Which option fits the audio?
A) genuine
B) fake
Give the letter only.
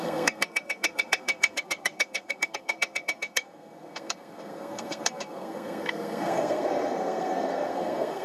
B